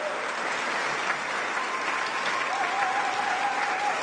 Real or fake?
real